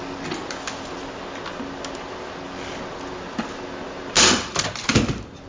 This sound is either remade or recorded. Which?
recorded